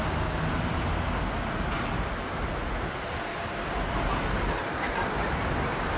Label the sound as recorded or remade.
recorded